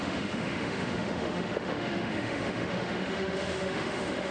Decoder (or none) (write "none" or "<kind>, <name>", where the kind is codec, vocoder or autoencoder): autoencoder, DAC-VAE